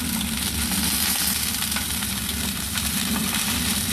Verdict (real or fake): real